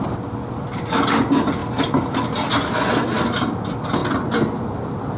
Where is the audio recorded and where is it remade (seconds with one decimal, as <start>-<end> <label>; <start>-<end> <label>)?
0.0-4.0 recorded; 4.0-5.2 remade